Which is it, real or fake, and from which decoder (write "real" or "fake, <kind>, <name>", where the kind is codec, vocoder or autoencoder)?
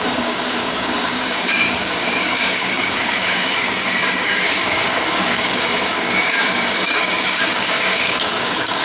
fake, codec, DAC